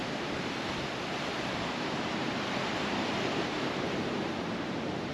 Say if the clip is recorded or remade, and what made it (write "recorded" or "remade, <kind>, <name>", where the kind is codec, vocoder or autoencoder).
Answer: remade, vocoder, BigVGAN v2